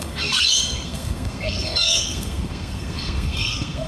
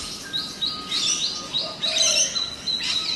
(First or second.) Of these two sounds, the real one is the second